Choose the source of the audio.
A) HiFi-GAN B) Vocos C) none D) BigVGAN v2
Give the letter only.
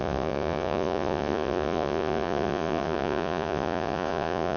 B